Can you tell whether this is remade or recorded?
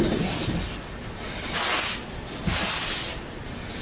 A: recorded